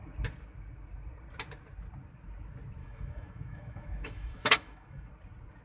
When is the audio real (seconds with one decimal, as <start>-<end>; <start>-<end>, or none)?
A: 0.0-2.8; 5.1-5.6